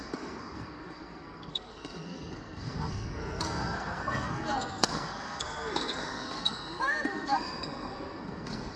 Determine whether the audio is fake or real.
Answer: fake